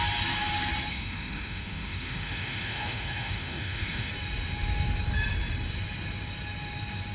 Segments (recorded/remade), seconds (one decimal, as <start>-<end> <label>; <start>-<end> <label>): 0.0-0.9 recorded; 0.9-4.1 remade; 4.1-7.1 recorded